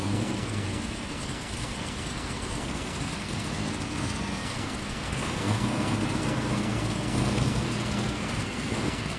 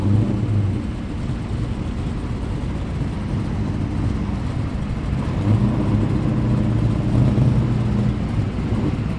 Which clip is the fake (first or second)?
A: first